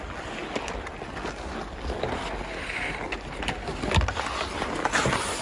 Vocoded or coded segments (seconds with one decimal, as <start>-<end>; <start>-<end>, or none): none